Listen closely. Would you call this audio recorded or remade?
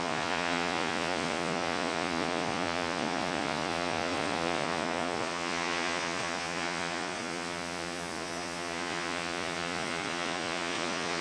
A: remade